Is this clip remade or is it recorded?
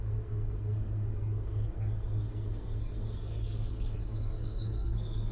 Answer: remade